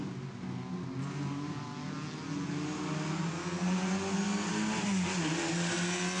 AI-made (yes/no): no